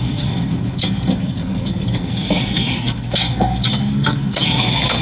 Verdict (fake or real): fake